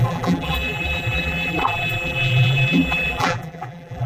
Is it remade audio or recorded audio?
remade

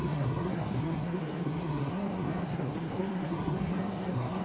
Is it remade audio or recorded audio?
remade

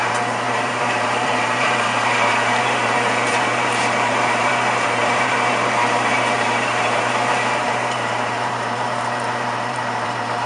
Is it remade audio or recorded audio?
remade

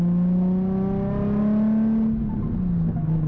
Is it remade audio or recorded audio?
recorded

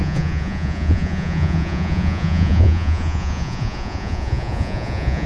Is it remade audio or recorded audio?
remade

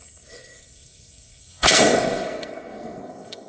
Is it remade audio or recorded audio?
remade